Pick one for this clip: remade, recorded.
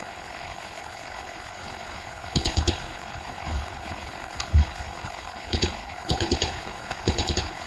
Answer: remade